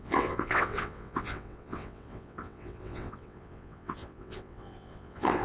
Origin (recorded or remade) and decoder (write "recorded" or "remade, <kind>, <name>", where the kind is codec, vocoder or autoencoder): remade, vocoder, WaveNeXt